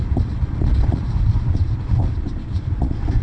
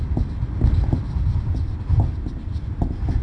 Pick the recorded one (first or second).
second